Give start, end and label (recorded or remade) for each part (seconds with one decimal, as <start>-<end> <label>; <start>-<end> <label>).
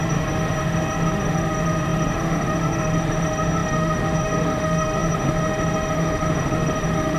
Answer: 0.0-7.2 remade